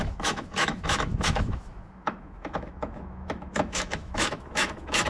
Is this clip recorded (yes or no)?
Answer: no